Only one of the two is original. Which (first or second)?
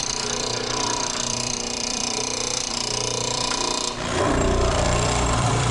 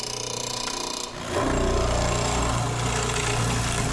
second